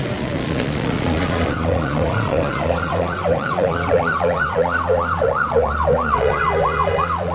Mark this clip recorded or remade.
remade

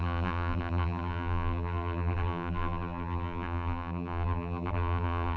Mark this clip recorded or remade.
remade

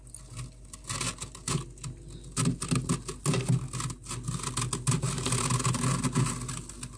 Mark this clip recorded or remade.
recorded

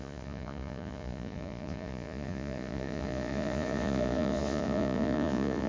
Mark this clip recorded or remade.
remade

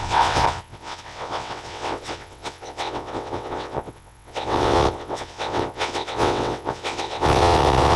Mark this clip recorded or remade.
remade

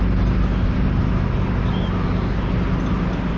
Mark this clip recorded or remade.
recorded